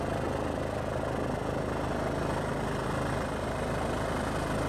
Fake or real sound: real